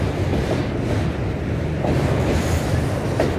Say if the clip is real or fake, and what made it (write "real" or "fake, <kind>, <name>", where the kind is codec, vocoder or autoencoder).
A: real